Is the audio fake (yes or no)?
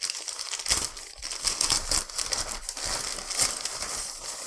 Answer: no